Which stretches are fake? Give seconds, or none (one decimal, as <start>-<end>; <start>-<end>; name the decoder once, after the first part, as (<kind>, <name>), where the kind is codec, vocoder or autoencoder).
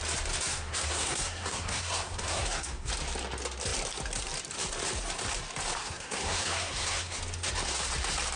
0.5-2.9 (codec, SNAC); 5.8-7.2